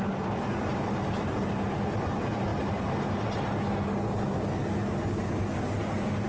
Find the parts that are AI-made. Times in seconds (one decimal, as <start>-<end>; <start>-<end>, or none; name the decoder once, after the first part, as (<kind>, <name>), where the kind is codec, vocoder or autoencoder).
none